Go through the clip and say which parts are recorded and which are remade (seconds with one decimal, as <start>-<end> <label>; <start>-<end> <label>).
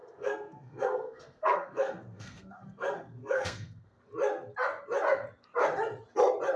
0.0-4.0 remade; 4.0-6.6 recorded